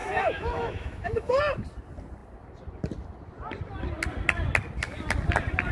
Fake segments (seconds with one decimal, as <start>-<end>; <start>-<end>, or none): 0.0-1.4